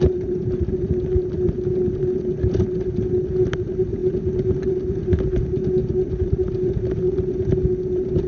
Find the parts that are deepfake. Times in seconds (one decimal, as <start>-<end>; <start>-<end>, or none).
none